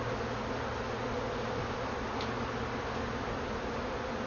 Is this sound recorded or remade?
recorded